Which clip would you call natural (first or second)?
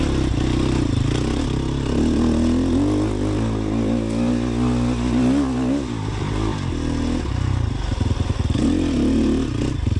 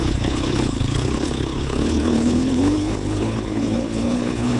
first